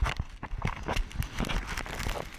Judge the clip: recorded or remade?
recorded